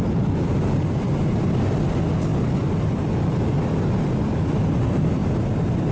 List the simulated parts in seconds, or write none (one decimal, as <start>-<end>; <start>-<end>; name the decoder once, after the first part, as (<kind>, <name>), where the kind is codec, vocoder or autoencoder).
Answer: none